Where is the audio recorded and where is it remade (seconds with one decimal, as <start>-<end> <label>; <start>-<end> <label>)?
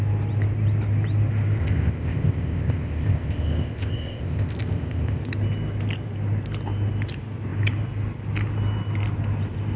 0.0-1.6 recorded; 1.6-5.2 remade; 5.2-9.8 recorded